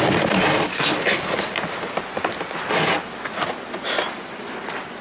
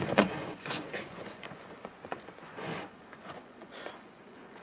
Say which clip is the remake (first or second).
second